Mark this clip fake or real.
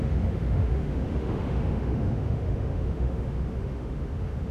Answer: fake